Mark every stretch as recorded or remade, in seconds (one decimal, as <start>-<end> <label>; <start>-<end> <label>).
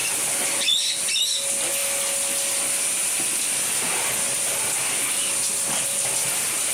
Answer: 0.0-0.6 remade; 0.6-6.7 recorded